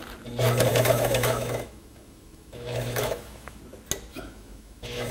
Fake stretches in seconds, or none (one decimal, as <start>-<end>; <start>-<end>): 0.7-3.6; 4.1-5.1